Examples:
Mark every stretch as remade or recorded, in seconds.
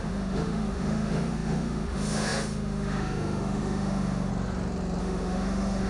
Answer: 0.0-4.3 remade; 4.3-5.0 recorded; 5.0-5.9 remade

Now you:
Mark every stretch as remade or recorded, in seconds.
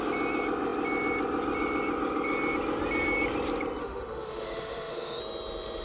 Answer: 0.0-3.8 recorded; 3.8-5.2 remade; 5.2-5.8 recorded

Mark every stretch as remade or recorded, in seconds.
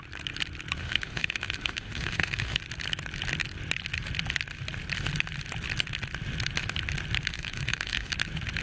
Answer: 0.0-0.8 recorded; 0.8-2.6 remade; 2.6-7.3 recorded; 7.3-8.1 remade; 8.1-8.6 recorded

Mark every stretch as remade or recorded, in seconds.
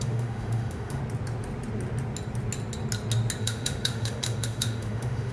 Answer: 0.0-1.0 remade; 1.0-3.4 recorded; 3.4-5.3 remade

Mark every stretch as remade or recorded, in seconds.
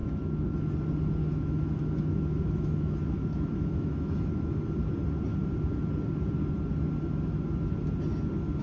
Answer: 0.0-0.7 remade; 0.7-1.2 recorded; 1.2-4.6 remade; 4.6-8.6 recorded